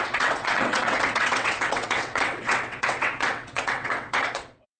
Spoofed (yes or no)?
yes